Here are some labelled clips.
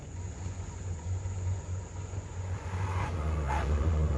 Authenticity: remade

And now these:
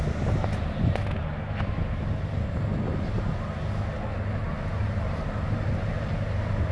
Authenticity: recorded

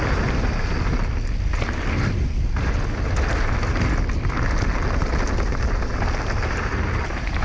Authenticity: recorded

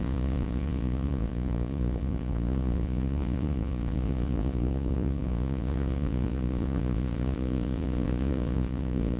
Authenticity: remade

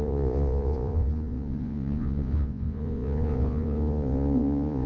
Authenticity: remade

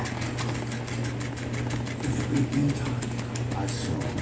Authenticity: recorded